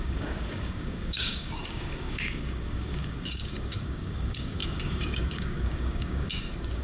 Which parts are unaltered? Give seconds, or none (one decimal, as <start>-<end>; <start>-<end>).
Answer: none